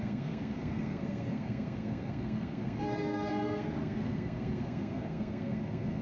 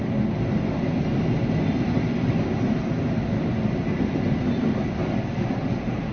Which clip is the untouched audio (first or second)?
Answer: second